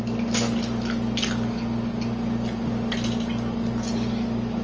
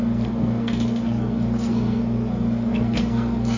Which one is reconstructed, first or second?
second